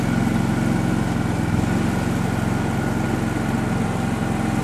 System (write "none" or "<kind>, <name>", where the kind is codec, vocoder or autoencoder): none